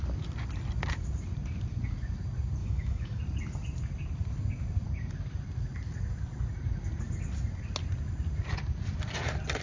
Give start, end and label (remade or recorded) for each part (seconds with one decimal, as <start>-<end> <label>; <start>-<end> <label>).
0.0-2.6 recorded; 2.6-3.2 remade; 3.2-9.6 recorded